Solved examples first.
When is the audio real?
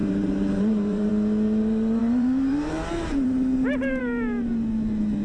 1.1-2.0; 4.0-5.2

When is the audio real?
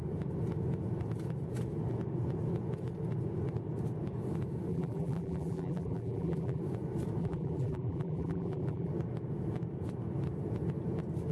0.0-4.7; 6.6-7.2; 8.9-11.3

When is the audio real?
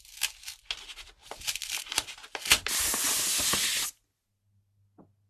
0.0-1.2; 2.8-5.3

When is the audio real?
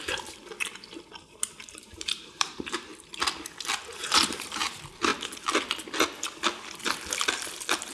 0.4-1.3; 2.9-4.0; 5.1-7.9